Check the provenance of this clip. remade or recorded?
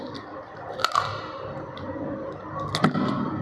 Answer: recorded